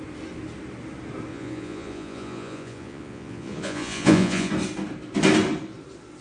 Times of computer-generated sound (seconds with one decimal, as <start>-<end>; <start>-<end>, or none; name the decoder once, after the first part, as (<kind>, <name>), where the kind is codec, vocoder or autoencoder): 1.3-4.5 (vocoder, Vocos)